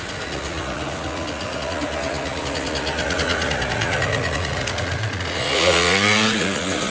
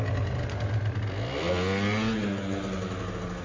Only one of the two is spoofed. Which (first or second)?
first